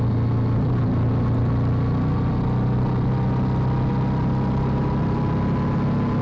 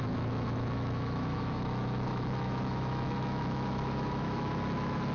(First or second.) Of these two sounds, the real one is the first